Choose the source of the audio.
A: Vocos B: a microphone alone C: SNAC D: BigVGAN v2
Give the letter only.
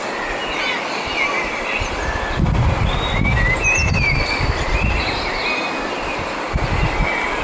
B